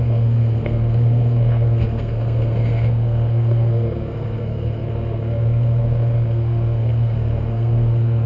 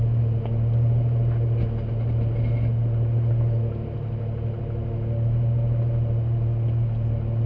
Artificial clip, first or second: first